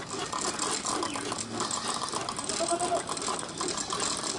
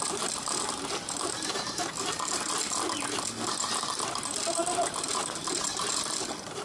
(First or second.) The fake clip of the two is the second